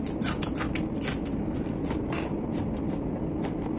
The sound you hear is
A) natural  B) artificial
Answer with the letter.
A